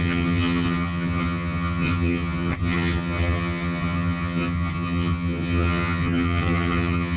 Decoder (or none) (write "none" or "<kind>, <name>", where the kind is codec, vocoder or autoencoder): vocoder, HiFi-GAN